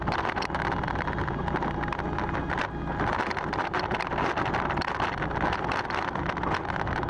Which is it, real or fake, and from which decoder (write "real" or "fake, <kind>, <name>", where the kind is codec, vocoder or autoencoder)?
real